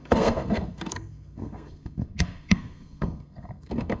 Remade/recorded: remade